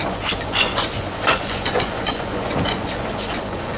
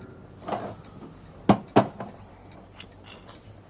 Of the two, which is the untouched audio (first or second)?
second